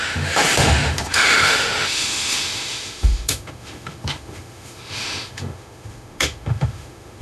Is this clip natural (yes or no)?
no